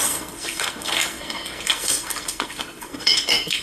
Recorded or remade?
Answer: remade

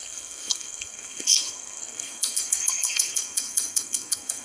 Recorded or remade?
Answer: remade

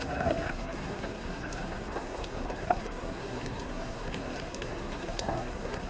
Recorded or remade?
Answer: remade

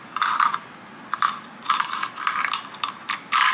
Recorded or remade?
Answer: recorded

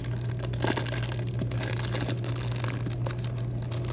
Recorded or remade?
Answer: recorded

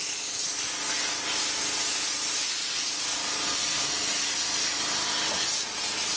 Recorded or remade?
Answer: recorded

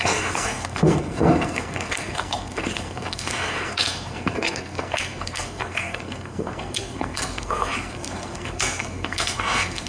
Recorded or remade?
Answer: remade